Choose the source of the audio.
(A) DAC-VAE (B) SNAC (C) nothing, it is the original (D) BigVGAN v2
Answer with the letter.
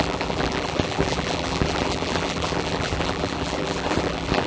D